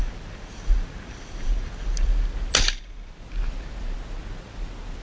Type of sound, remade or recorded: recorded